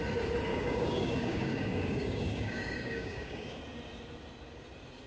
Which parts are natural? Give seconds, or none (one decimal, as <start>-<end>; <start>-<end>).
0.0-0.5; 3.6-5.1